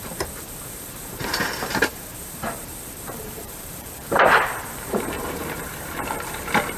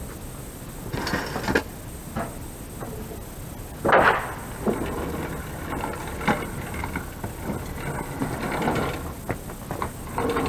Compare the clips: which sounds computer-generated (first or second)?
first